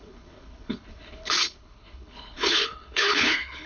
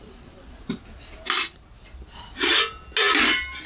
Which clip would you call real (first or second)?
second